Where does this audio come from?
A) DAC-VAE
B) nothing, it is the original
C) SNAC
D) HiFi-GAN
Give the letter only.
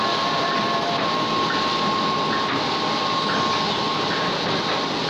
B